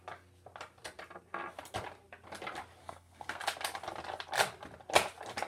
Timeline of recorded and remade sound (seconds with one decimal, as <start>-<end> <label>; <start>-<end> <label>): 0.0-2.8 recorded; 2.8-3.4 remade; 3.4-5.5 recorded